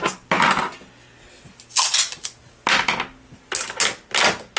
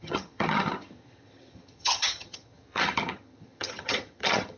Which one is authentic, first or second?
first